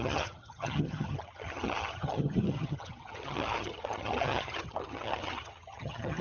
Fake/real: fake